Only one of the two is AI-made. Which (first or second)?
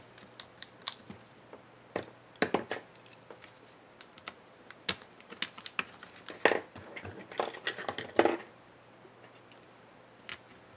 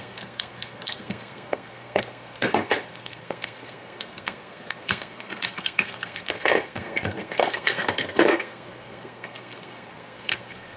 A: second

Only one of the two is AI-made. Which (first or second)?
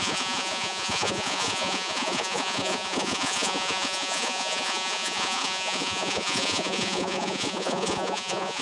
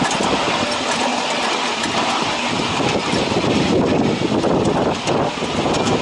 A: first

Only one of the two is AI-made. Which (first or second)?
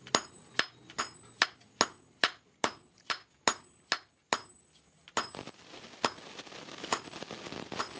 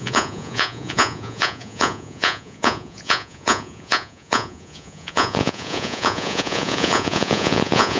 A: second